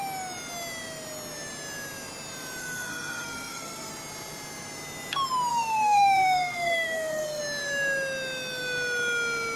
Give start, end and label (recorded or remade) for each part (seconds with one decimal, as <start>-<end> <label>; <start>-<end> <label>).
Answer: 0.0-2.6 recorded; 2.6-3.9 remade; 3.9-5.5 recorded; 5.5-7.4 remade; 7.4-9.6 recorded